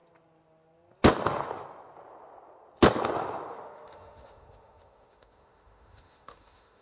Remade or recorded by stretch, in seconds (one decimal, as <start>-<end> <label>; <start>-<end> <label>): 0.0-3.5 recorded; 3.5-6.8 remade